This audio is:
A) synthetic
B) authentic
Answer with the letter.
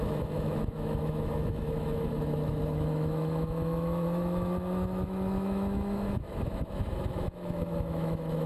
A